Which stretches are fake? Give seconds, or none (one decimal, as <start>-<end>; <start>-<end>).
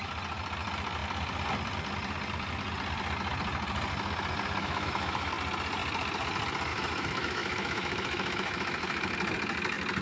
4.6-5.3; 6.7-9.1